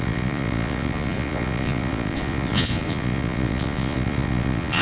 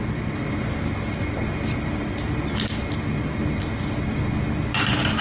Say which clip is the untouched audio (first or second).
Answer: second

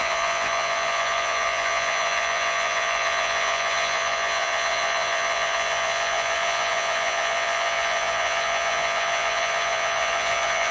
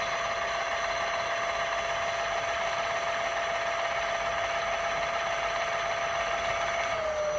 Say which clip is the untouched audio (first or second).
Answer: second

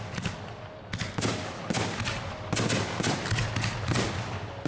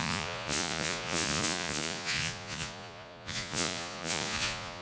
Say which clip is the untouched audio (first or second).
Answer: first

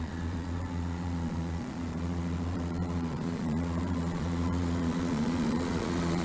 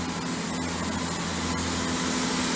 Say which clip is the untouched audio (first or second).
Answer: second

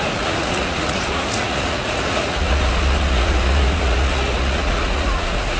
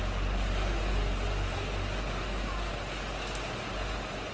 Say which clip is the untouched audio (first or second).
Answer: second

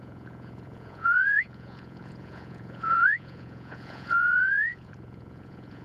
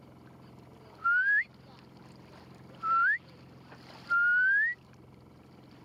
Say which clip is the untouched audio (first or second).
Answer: second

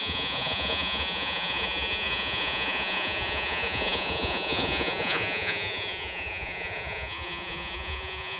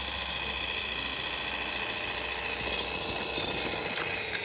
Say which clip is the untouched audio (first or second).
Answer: second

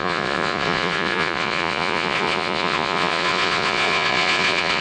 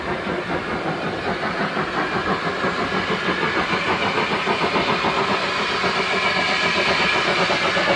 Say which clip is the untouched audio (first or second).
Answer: second